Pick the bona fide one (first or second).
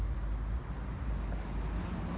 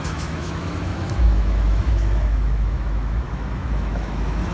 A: first